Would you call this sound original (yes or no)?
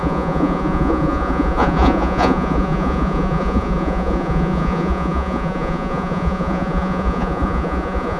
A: no